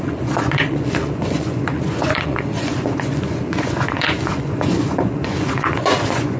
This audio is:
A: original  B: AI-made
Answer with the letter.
B